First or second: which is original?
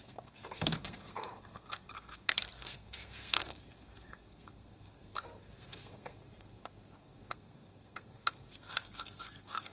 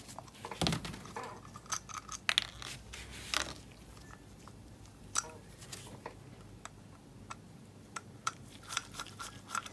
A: second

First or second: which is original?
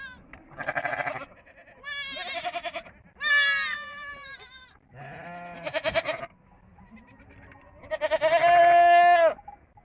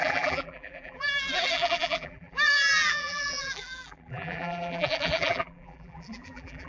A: first